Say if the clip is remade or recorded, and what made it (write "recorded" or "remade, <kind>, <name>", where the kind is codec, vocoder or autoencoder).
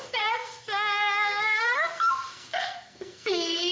remade, codec, SNAC